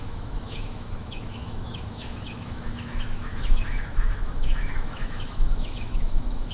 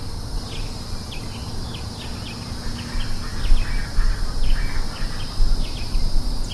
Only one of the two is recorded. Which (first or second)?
second